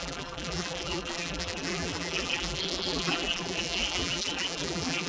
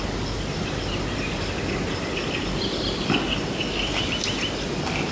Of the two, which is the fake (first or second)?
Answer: first